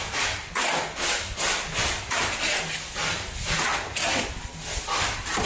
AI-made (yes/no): no